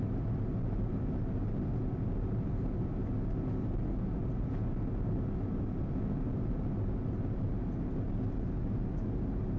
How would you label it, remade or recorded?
recorded